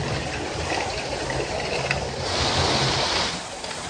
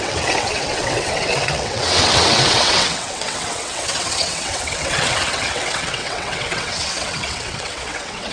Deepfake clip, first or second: second